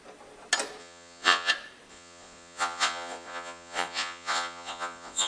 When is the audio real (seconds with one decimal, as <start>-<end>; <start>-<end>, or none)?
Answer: 0.0-0.8; 1.5-1.9